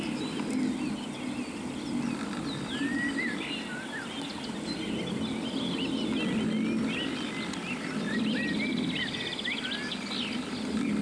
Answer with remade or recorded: recorded